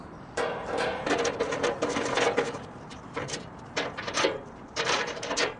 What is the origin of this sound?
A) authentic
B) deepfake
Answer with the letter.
B